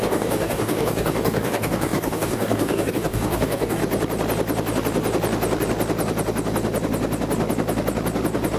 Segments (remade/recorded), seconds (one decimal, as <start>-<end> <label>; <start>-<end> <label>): 0.0-3.8 remade; 3.8-8.6 recorded